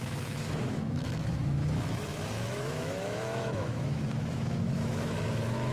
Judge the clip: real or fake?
fake